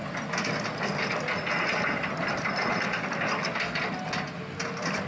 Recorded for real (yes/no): yes